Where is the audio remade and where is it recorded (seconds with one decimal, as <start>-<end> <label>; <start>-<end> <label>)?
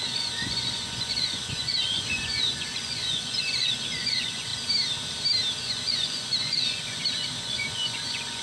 0.0-4.5 remade; 4.5-5.6 recorded; 5.6-8.4 remade